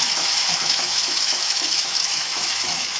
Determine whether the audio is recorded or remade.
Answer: remade